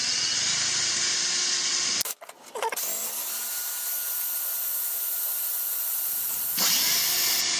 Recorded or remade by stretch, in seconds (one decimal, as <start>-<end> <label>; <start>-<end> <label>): 0.0-7.6 recorded